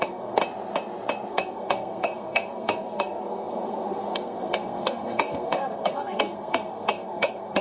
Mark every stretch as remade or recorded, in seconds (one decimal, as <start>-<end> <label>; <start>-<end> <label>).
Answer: 0.0-0.4 remade; 0.4-1.3 recorded; 1.3-7.6 remade